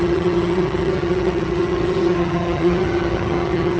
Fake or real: fake